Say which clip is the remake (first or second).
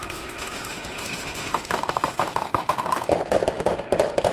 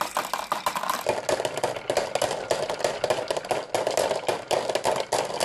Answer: first